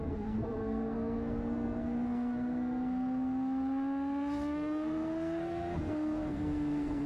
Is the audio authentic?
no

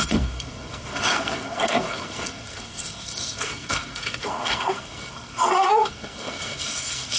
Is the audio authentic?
no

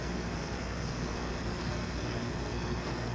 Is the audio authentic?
no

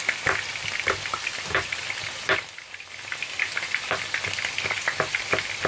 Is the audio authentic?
yes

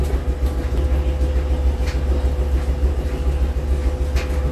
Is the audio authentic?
yes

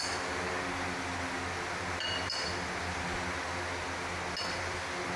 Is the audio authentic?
yes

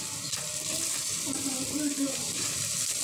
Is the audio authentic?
no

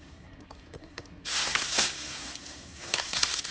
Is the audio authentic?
no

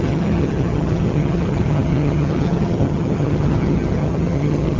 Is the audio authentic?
no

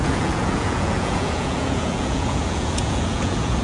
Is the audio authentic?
no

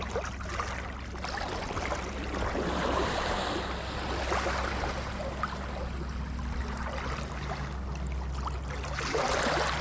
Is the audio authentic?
yes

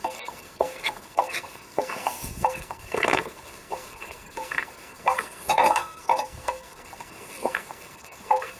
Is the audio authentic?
no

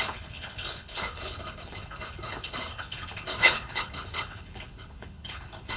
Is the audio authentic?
no